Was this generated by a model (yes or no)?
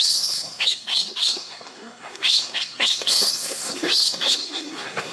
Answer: yes